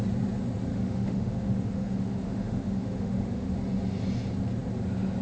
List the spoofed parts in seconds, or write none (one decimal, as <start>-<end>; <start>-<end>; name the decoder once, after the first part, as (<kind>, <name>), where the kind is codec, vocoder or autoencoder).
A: 0.7-3.5 (autoencoder, DAC-VAE)